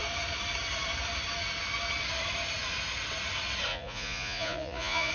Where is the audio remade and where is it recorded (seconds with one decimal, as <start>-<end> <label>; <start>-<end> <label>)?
0.0-3.7 recorded; 3.7-5.1 remade